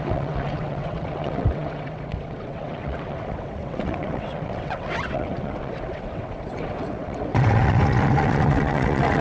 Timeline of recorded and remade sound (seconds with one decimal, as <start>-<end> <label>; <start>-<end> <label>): 0.0-9.2 remade